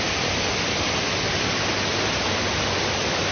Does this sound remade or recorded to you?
recorded